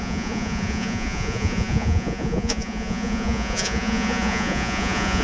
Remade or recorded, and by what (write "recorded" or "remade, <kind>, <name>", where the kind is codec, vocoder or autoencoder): remade, vocoder, Vocos